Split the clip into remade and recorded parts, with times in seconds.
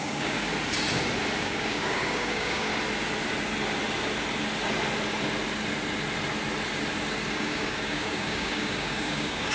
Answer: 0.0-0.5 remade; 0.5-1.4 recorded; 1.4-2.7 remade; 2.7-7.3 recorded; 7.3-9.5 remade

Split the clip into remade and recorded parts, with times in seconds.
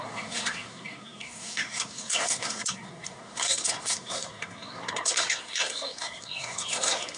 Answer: 0.0-7.2 remade